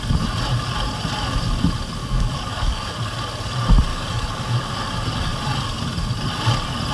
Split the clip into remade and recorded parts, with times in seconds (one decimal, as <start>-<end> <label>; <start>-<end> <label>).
0.0-2.0 recorded; 2.0-2.9 remade; 2.9-3.9 recorded; 3.9-4.7 remade; 4.7-6.9 recorded